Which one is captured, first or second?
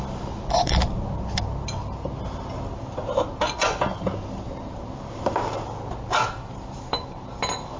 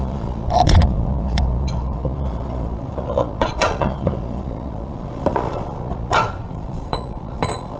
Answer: first